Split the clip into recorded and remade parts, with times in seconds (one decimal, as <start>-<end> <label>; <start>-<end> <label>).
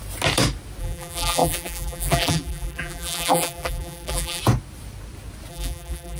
0.0-0.8 recorded; 0.8-4.4 remade; 4.4-5.5 recorded; 5.5-6.2 remade